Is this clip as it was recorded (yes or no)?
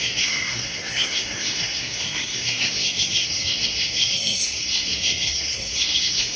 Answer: no